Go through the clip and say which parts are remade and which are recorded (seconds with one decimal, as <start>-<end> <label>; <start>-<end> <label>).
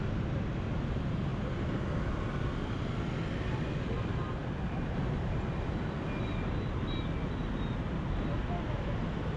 0.0-9.4 recorded